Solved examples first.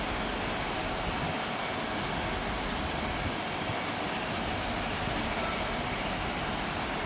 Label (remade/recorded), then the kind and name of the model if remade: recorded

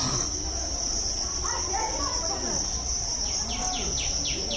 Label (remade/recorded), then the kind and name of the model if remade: recorded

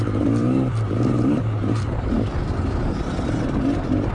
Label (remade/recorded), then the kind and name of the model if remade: remade, vocoder, BigVGAN v2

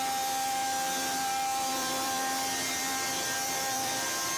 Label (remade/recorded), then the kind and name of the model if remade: remade, vocoder, BigVGAN v2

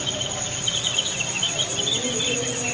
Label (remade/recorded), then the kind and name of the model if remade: remade, vocoder, BigVGAN v2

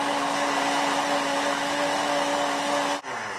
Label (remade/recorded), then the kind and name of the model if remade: recorded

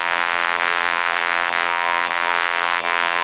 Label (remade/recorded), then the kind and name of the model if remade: remade, vocoder, BigVGAN v2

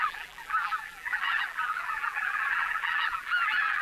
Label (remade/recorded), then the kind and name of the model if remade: remade, vocoder, BigVGAN v2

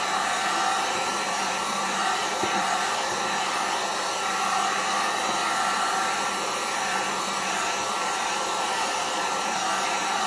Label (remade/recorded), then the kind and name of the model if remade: remade, vocoder, BigVGAN v2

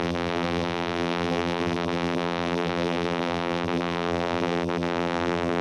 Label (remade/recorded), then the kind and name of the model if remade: remade, vocoder, BigVGAN v2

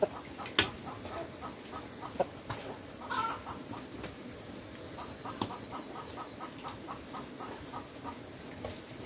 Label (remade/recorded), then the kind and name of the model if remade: recorded